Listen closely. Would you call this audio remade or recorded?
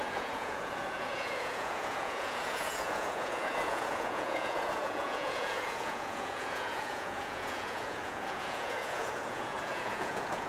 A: remade